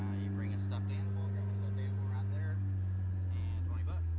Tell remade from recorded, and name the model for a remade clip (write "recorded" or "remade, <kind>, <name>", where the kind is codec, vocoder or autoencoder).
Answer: recorded